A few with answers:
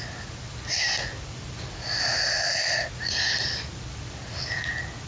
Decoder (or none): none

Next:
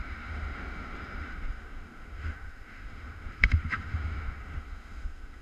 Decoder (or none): autoencoder, DAC-VAE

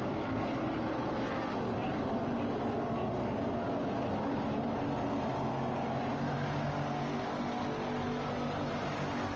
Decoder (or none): none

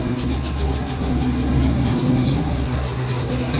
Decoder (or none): codec, SNAC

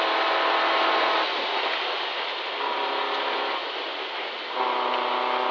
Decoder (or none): none